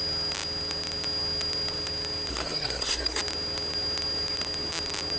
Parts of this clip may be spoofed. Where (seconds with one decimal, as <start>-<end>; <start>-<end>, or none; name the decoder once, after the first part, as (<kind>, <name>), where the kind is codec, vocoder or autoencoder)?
2.3-3.2 (codec, SNAC)